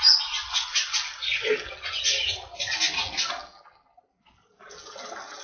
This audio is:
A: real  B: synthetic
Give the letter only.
A